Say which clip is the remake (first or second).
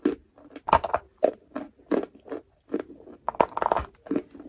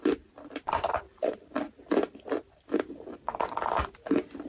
second